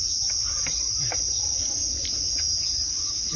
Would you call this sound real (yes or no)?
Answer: yes